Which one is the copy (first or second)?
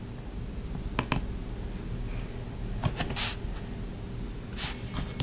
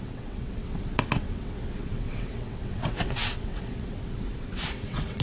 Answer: second